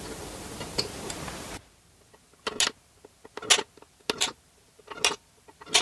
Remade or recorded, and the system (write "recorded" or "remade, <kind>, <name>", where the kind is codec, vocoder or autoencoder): recorded